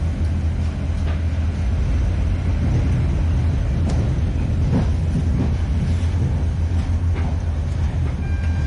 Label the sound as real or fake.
real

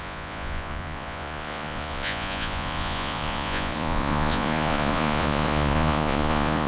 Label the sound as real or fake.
fake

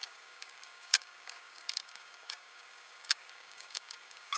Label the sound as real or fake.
fake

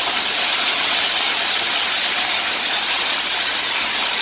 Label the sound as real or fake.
real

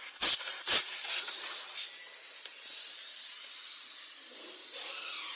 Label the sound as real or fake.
real